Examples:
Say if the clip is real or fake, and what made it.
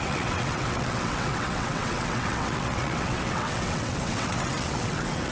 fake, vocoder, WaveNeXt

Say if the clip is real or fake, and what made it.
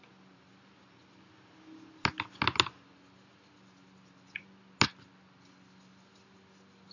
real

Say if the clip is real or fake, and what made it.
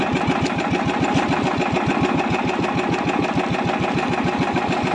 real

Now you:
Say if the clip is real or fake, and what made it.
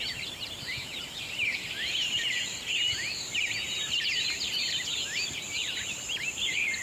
fake, vocoder, BigVGAN v2